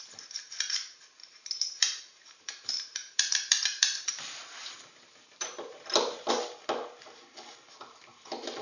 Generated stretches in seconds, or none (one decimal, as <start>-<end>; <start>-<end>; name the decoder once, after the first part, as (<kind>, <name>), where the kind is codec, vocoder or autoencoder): 1.2-6.3 (vocoder, BigVGAN v2)